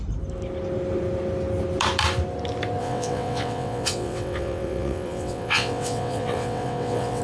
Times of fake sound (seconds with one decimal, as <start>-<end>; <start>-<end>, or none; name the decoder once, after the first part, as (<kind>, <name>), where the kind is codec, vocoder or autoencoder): 2.8-7.2 (vocoder, WaveNeXt)

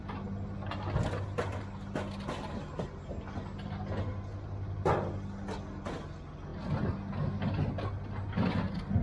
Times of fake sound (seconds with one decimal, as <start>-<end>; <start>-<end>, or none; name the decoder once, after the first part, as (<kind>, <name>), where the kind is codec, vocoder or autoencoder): none